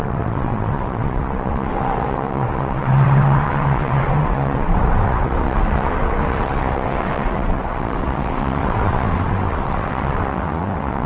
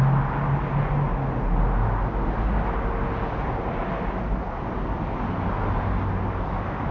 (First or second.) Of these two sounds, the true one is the second